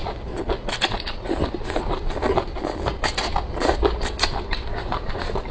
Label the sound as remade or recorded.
recorded